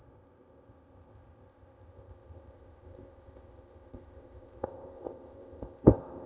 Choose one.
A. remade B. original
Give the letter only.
A